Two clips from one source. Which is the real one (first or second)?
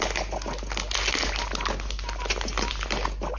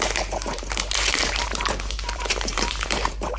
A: first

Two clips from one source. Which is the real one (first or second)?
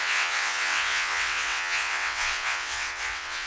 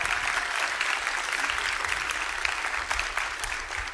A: second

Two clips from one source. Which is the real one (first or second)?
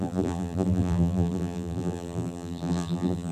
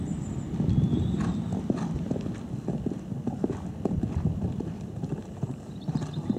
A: second